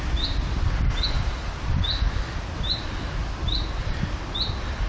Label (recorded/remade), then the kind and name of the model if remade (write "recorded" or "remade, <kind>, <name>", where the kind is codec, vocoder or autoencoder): recorded